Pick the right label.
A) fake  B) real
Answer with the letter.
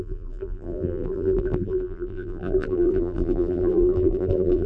A